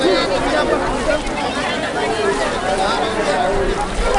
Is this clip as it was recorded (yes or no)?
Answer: yes